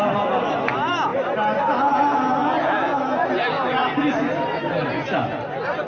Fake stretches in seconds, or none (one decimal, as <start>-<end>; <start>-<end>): none